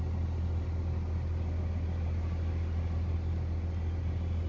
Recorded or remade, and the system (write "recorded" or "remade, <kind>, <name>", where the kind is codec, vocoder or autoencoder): recorded